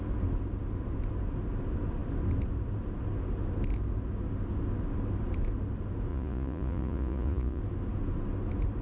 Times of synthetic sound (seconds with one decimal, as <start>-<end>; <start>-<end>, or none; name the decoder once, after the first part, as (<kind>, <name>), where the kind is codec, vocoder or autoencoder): 6.1-7.6 (vocoder, Vocos)